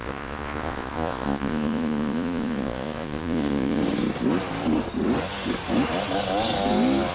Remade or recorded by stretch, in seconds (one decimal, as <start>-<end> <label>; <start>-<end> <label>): 0.0-3.8 remade; 3.8-7.1 recorded